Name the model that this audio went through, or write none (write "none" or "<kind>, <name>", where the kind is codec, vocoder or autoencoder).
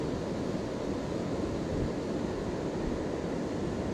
none